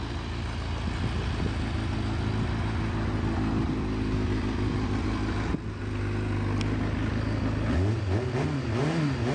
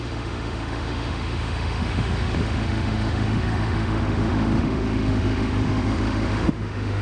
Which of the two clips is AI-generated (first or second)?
second